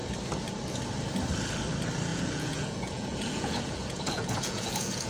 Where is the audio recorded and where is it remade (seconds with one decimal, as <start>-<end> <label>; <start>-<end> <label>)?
0.0-2.1 recorded; 2.1-5.1 remade